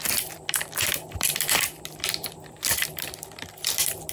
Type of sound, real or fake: fake